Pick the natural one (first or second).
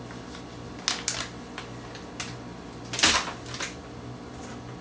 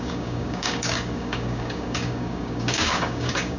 first